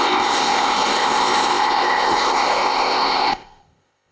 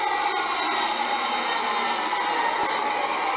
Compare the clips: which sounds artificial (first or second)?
first